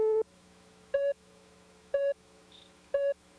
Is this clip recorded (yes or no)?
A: no